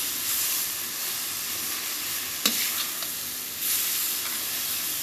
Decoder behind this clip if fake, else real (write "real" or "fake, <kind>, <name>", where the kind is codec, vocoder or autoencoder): real